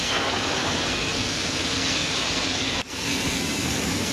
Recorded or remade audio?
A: remade